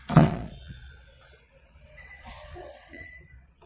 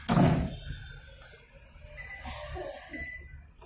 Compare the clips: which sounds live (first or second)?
second